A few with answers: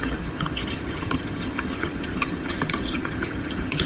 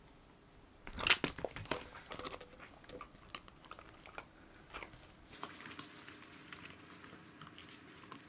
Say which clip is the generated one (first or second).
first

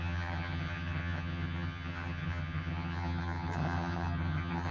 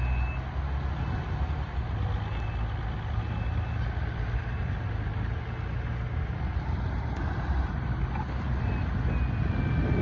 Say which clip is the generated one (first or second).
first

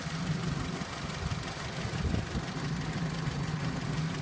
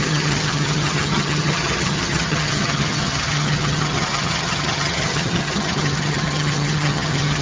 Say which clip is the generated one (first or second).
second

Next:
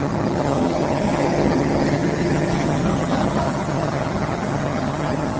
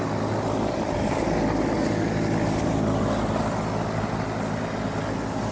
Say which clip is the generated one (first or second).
first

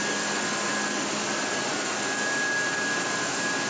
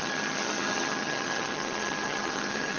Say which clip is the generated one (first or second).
second